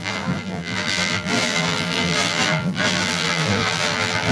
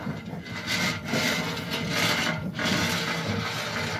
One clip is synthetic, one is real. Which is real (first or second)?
second